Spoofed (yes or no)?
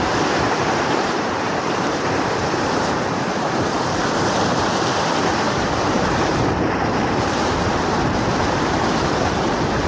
yes